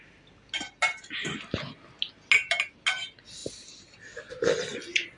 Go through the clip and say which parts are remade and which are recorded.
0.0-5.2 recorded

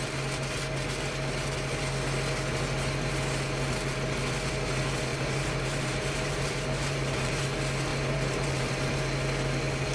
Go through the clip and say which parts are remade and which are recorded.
0.0-5.1 recorded; 5.1-7.5 remade; 7.5-7.9 recorded; 7.9-9.0 remade; 9.0-9.9 recorded